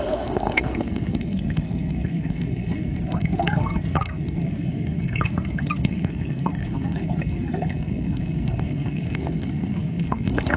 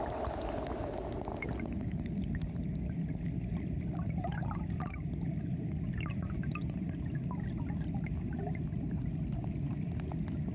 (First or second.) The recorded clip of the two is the second